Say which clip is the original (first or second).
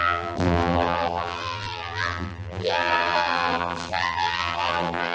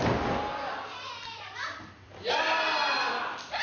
second